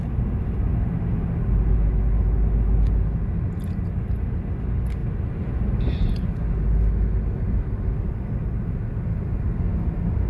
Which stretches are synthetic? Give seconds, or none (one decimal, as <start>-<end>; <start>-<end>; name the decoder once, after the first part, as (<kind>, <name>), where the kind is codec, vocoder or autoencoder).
5.0-5.8 (vocoder, BigVGAN v2)